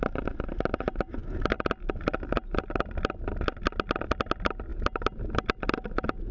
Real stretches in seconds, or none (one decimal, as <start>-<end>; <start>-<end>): 0.0-6.3